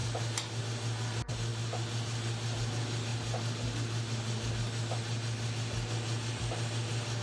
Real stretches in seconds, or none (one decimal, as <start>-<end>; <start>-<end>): 0.0-7.2